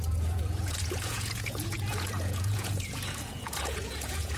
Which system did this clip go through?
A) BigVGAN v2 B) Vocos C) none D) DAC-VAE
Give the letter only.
B